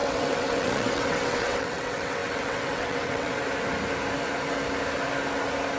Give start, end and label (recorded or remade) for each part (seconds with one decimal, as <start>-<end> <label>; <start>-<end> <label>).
0.0-3.4 remade; 3.4-5.8 recorded